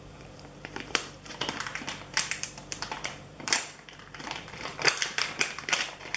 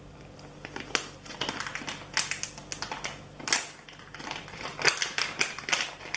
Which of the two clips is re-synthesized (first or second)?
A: first